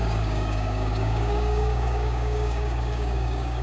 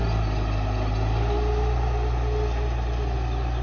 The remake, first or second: first